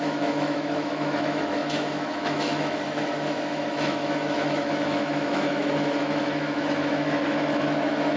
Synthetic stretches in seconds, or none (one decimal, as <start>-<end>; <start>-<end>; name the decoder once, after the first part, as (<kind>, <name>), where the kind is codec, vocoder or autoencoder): 0.0-8.2 (autoencoder, DAC-VAE)

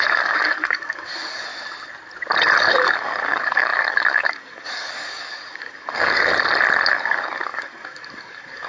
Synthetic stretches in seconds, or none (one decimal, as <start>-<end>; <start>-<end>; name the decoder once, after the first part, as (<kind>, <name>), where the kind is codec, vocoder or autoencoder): 0.0-1.5 (codec, DAC); 2.6-6.3; 6.9-8.7

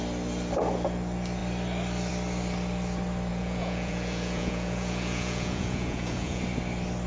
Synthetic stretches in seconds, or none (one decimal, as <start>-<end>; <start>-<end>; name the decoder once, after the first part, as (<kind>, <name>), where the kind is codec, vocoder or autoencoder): 3.3-6.4 (vocoder, Vocos)

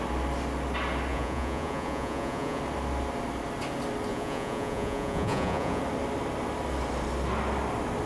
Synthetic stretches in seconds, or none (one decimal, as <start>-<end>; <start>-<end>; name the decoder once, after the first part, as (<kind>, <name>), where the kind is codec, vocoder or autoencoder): 1.1-2.6 (vocoder, Vocos); 4.1-5.8

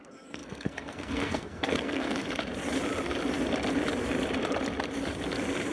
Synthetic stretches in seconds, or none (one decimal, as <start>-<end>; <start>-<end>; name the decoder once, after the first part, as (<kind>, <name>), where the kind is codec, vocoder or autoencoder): 0.0-2.2 (codec, SNAC)

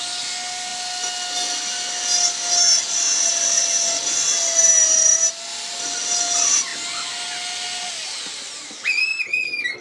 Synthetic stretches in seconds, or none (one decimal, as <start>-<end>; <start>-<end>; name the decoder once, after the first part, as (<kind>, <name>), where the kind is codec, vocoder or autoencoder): none